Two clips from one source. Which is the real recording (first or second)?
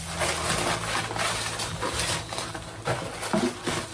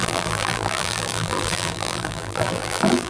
first